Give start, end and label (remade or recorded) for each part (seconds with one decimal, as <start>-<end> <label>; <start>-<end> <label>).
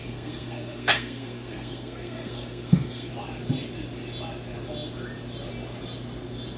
0.0-3.1 remade; 3.1-6.6 recorded